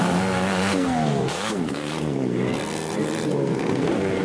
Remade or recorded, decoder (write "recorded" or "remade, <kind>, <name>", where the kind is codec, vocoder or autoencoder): remade, codec, SNAC